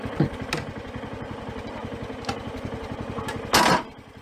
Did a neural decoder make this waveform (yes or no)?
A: no